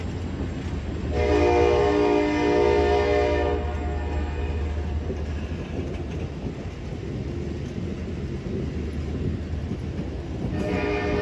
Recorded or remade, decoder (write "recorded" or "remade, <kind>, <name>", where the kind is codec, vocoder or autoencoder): recorded